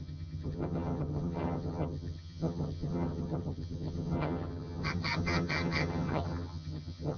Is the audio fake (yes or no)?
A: yes